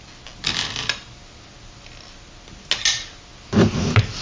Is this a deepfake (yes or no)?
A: no